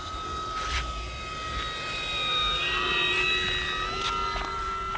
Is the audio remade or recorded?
recorded